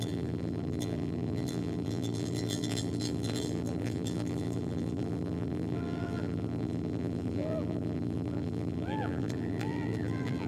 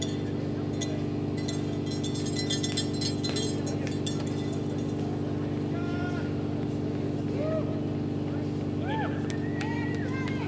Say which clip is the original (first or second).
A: second